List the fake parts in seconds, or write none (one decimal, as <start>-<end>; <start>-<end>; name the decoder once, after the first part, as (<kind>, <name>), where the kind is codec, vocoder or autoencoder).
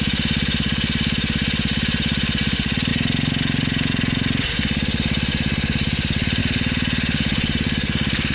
none